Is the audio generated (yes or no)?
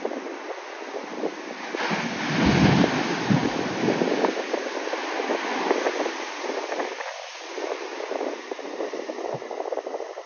no